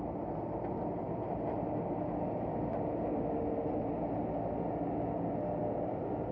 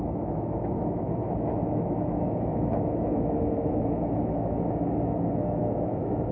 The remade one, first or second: second